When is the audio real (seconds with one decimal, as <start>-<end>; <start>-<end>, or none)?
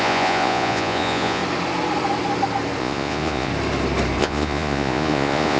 1.4-2.8; 3.5-4.2